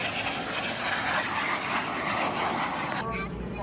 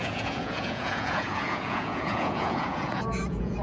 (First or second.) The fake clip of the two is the second